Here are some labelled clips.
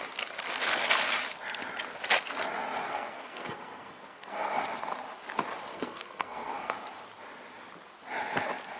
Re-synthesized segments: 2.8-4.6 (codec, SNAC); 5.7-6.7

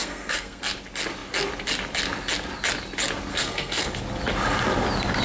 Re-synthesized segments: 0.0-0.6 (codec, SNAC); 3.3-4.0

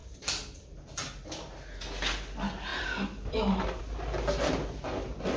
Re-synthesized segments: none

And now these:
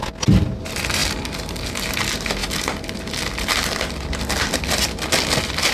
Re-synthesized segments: none

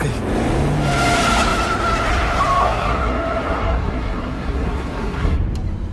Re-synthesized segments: 2.6-5.4 (codec, SNAC)

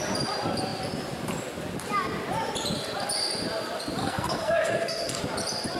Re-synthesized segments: 4.0-5.2 (codec, SNAC)